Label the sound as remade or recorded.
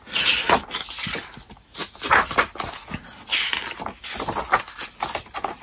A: recorded